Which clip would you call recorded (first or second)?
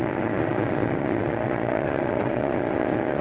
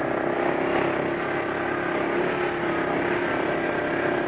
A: second